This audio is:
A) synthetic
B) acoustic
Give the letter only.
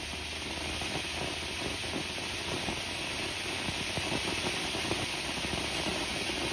B